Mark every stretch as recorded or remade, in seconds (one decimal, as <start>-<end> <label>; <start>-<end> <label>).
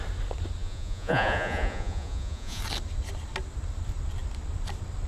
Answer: 0.0-0.6 recorded; 0.6-2.6 remade; 2.6-5.1 recorded